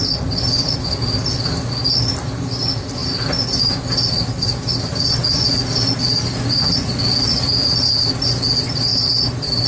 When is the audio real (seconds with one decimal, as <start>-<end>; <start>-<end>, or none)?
0.0-9.7